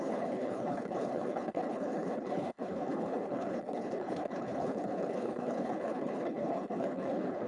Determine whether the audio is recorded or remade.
remade